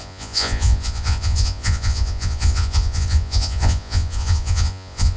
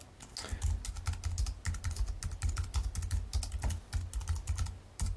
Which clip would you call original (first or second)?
second